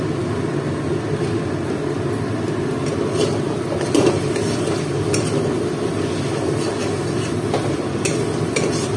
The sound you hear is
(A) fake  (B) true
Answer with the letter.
B